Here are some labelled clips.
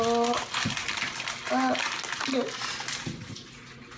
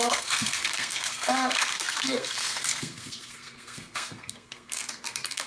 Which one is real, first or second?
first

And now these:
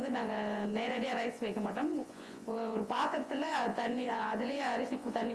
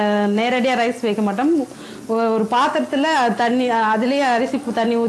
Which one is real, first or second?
second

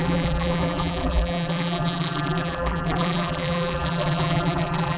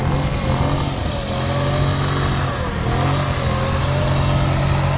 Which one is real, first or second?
second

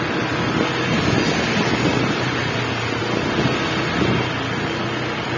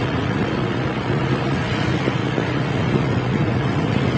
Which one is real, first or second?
first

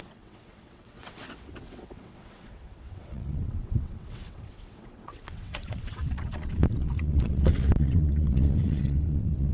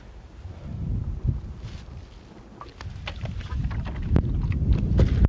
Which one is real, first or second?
second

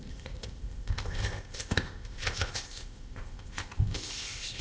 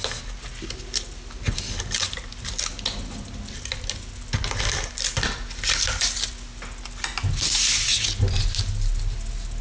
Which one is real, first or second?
second